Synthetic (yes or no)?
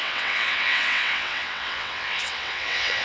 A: yes